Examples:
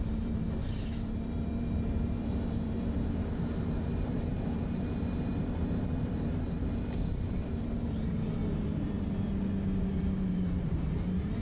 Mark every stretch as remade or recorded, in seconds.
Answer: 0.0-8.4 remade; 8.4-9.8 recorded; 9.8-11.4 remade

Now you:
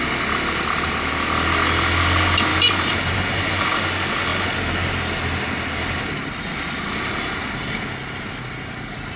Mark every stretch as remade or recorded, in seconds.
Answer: 0.0-2.5 recorded; 2.5-3.8 remade; 3.8-9.2 recorded